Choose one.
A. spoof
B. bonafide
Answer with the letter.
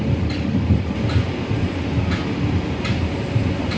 B